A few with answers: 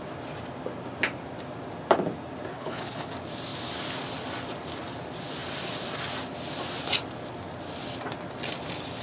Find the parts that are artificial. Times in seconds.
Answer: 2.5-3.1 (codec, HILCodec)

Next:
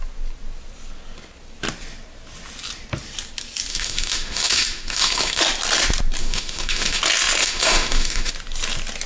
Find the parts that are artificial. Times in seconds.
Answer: 3.7-5.4 (autoencoder, DAC-VAE); 6.2-7.0; 7.4-8.3